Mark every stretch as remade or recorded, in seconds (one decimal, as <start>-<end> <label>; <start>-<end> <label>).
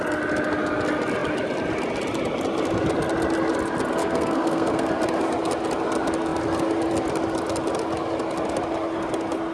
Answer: 0.0-4.0 recorded; 4.0-4.9 remade; 4.9-9.5 recorded